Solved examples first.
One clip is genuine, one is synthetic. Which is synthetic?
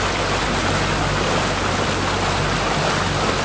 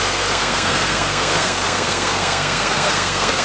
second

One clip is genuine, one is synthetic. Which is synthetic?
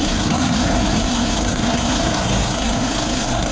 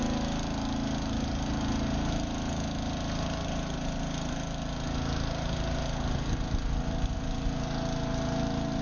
first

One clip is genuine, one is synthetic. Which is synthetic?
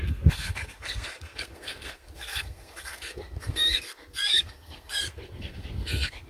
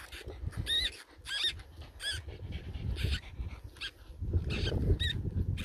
first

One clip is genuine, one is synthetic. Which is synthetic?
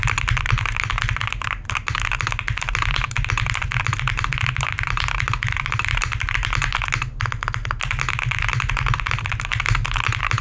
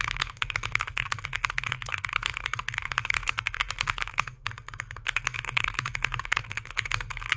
second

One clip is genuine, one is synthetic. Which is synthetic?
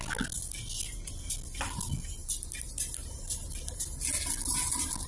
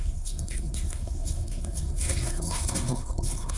second